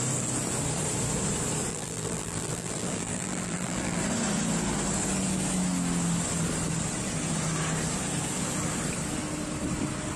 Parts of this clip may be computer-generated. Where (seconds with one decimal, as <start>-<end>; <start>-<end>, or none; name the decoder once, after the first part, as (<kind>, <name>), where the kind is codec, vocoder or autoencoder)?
1.7-4.0 (vocoder, BigVGAN v2)